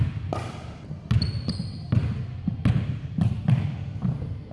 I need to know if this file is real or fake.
real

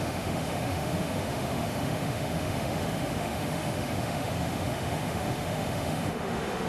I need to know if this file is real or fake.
fake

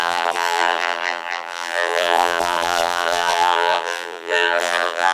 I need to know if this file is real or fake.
fake